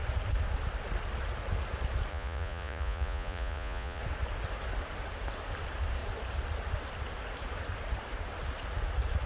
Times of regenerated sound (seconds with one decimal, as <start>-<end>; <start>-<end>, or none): 2.1-4.0